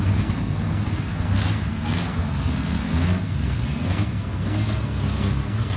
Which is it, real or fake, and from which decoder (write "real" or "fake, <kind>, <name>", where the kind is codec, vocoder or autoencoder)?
fake, codec, SNAC